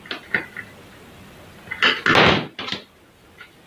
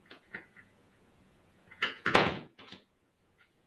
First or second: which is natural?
first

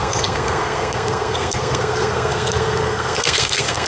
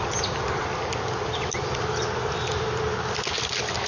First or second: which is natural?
second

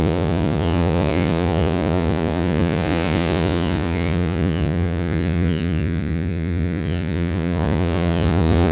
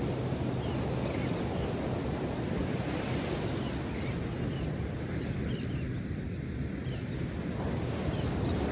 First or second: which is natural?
second